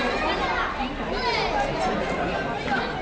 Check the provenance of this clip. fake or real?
real